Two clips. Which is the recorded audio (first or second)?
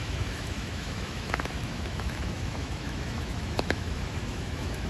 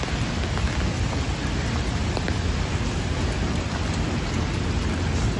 second